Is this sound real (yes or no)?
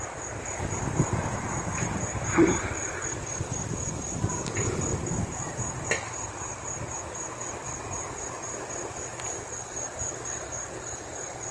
yes